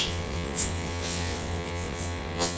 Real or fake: fake